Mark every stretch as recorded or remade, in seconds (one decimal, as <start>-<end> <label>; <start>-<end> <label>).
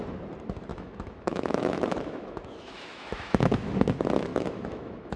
0.0-0.7 recorded; 0.7-3.8 remade; 3.8-4.3 recorded; 4.3-5.2 remade